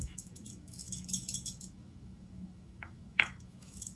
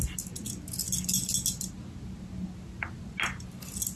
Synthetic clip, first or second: first